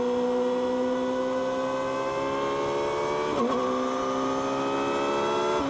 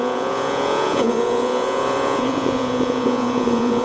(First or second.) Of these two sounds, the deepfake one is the second